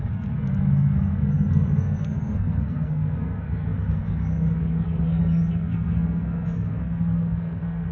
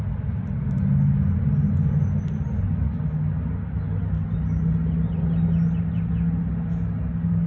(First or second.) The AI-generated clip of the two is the first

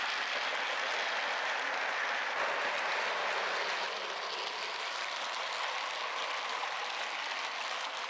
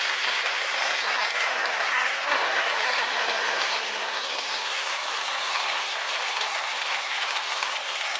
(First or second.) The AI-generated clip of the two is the second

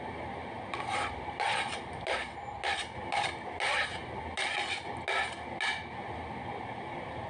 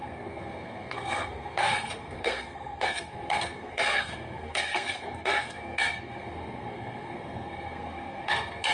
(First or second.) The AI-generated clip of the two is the second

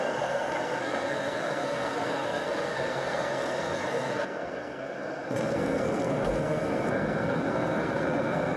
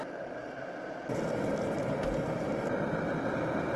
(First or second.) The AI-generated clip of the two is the first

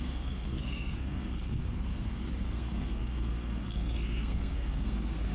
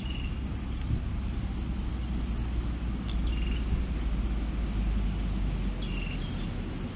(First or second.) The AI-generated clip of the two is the first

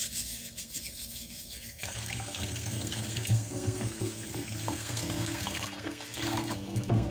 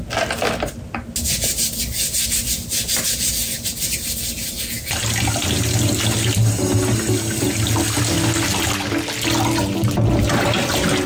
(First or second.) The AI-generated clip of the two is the first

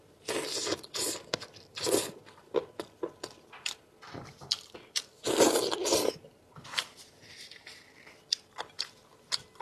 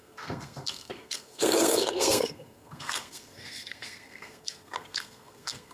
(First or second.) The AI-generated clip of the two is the second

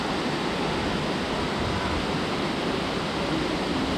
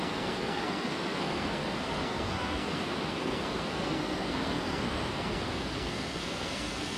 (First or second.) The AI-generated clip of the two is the second